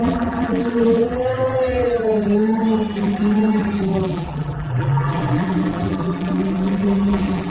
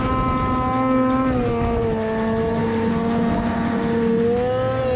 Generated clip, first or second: first